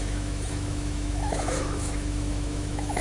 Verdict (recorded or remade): remade